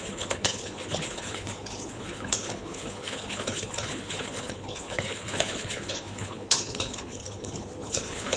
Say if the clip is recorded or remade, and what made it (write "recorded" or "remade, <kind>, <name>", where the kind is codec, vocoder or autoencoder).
remade, codec, HILCodec